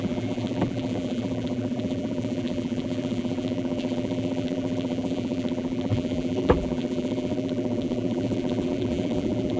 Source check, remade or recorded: remade